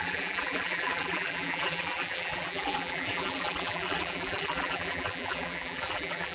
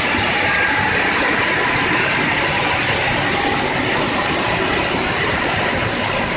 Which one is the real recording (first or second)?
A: second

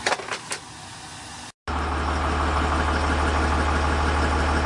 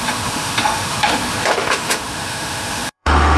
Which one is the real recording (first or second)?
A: first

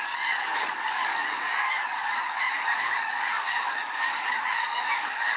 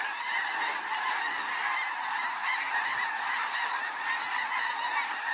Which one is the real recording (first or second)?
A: second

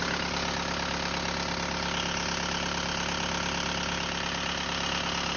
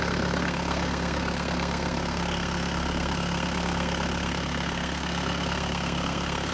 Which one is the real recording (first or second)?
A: first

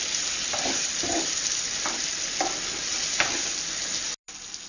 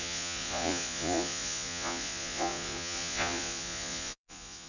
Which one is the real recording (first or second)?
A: first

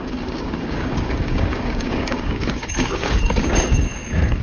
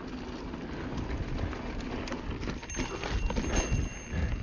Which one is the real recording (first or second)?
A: second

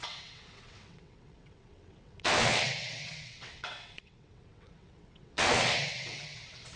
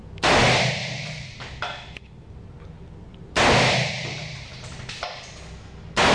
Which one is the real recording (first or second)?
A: second